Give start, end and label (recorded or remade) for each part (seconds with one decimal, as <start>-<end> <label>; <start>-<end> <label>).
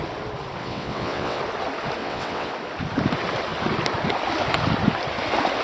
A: 0.0-0.6 recorded; 0.6-1.4 remade; 1.4-2.0 recorded; 2.0-2.5 remade; 2.5-5.6 recorded